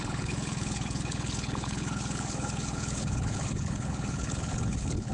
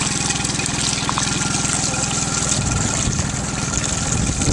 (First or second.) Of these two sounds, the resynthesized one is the first